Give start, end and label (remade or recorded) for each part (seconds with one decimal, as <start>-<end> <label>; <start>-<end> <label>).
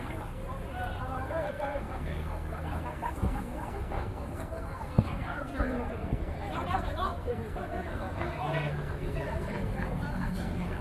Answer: 0.0-0.4 remade; 0.4-1.0 recorded; 1.0-10.8 remade